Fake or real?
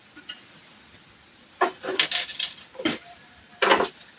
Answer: real